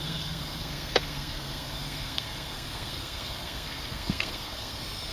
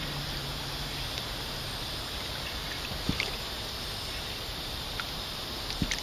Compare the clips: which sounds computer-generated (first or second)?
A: first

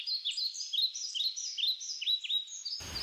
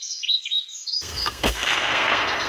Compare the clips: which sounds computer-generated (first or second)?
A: second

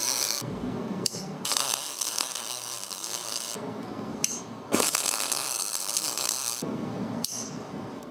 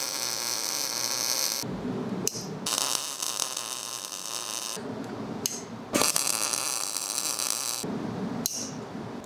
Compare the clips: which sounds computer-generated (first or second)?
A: first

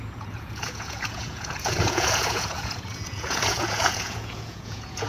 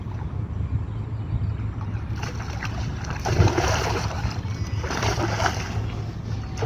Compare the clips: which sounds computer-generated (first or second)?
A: first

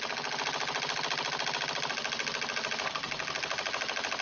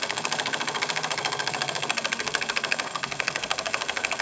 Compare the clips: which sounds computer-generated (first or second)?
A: second